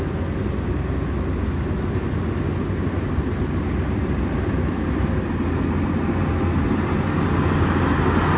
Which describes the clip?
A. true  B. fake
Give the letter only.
A